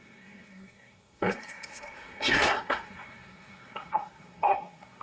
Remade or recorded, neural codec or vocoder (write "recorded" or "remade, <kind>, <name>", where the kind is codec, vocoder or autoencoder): remade, codec, SNAC